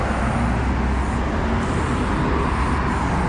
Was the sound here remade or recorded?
recorded